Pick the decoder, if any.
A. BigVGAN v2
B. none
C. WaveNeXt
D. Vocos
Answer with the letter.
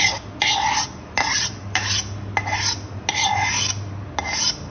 B